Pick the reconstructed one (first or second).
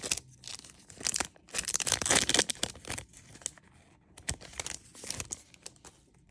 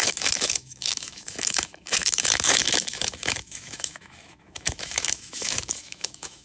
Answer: second